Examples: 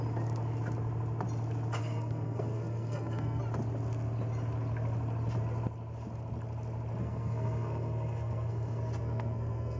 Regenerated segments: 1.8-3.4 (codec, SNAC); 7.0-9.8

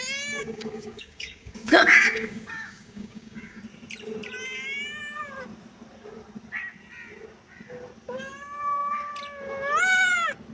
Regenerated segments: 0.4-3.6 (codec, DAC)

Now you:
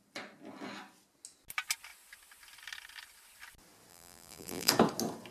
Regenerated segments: 3.9-4.7 (vocoder, BigVGAN v2)

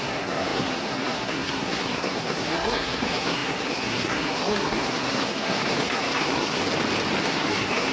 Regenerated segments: 0.0-6.6 (codec, SNAC); 7.2-7.9